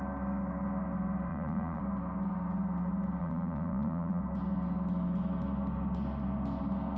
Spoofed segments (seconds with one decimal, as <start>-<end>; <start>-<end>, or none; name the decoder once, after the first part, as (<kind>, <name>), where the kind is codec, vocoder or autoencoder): 1.3-1.8 (vocoder, Vocos); 3.2-4.2